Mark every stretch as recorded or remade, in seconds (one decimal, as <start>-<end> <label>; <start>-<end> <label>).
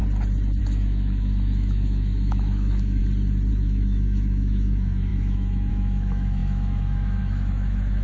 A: 0.0-0.6 recorded; 0.6-3.0 remade; 3.0-3.5 recorded; 3.5-8.0 remade